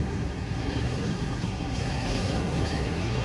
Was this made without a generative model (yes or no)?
no